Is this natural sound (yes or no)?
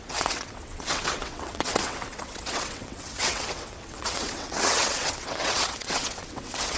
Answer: no